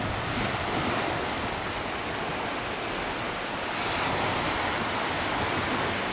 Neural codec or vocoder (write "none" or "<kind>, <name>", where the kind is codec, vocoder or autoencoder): none